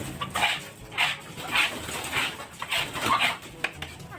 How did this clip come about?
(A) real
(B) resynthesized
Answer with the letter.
A